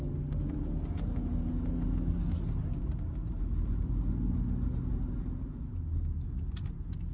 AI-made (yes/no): no